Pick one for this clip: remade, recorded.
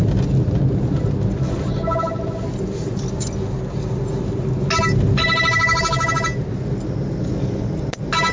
recorded